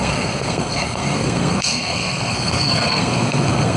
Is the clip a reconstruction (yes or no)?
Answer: yes